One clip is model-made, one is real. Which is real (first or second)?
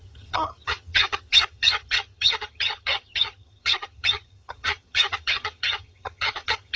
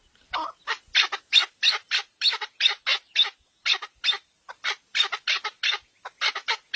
second